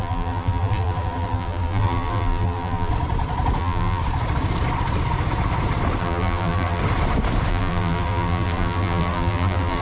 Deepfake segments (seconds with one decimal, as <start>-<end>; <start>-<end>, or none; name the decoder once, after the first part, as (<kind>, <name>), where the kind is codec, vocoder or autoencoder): 0.0-2.9 (vocoder, BigVGAN v2); 3.6-4.0; 6.0-6.8; 7.5-9.8